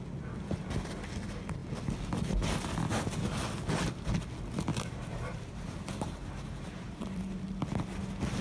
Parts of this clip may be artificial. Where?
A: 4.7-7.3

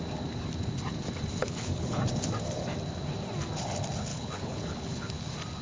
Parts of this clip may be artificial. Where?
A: 1.4-2.0; 4.1-5.1

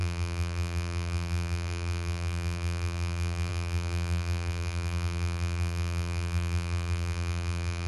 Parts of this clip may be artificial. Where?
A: 0.0-7.9

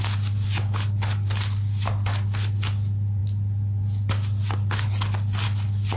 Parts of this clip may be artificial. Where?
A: none

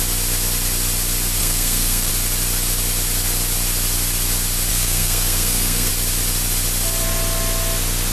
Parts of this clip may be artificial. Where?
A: 1.4-2.1; 4.7-5.9

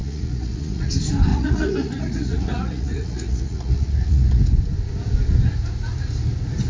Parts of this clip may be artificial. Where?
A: 0.0-0.9; 1.3-4.5

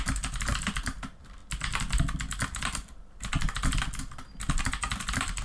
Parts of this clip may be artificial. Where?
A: none

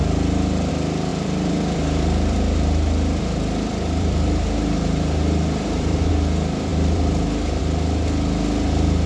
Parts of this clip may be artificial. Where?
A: 1.1-6.1; 6.7-7.6